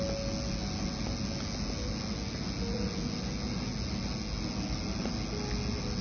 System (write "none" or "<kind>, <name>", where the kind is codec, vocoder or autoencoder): none